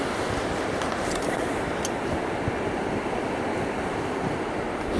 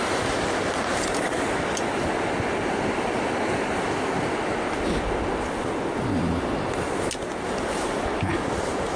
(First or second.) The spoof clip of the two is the first